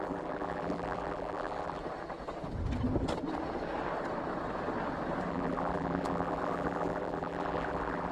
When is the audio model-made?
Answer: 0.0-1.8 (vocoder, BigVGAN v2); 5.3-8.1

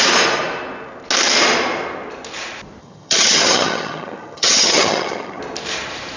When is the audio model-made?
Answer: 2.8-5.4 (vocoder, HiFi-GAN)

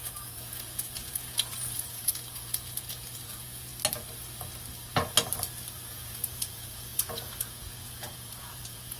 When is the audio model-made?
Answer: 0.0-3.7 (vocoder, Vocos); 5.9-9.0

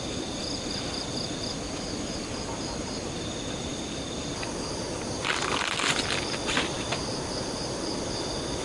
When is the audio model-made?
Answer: none

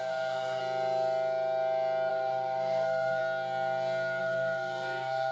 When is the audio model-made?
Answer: 0.0-0.6 (codec, SNAC); 2.1-3.2; 4.2-5.3

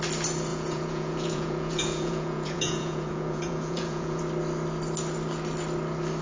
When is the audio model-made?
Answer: 0.5-4.2 (vocoder, Vocos)